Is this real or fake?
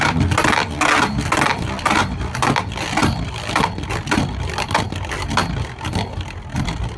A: real